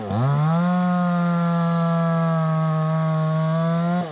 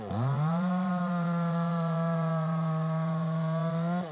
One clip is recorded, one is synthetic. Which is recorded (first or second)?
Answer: first